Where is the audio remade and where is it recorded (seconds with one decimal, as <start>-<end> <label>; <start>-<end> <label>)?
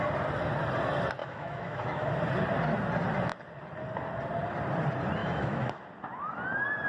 0.0-1.2 recorded; 1.2-2.1 remade; 2.1-5.2 recorded; 5.2-5.8 remade; 5.8-6.9 recorded